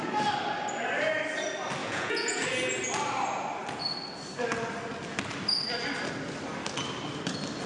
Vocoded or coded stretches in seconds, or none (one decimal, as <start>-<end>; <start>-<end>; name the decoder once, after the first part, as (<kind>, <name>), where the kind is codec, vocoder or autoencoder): 1.8-2.4 (vocoder, Vocos)

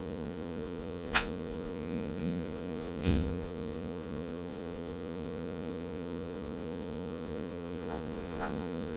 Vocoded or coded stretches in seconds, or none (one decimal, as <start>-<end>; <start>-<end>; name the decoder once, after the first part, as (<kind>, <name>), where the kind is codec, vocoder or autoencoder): 0.0-9.0 (vocoder, Vocos)

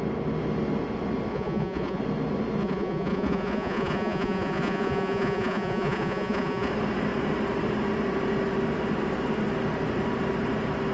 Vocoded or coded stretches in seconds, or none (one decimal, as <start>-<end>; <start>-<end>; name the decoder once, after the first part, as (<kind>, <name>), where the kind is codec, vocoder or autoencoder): 1.3-2.0 (vocoder, Vocos); 2.6-6.7

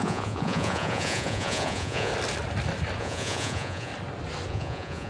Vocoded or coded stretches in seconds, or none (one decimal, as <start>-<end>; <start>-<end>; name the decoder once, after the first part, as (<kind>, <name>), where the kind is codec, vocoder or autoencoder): 0.0-2.1 (vocoder, Vocos); 3.0-3.9; 4.5-5.1

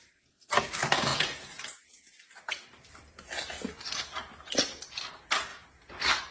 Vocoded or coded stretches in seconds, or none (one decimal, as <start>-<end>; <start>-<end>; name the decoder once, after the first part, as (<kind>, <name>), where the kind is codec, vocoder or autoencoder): 1.1-2.5 (vocoder, Vocos)

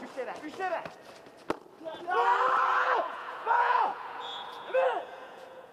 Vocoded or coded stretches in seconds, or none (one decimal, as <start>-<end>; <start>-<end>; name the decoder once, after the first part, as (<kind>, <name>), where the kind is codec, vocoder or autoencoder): 2.7-5.7 (vocoder, Vocos)